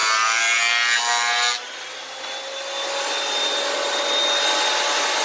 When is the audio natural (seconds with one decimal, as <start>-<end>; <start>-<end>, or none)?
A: 0.0-5.2